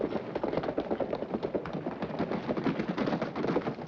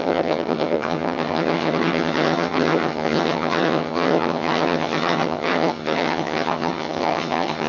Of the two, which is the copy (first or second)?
second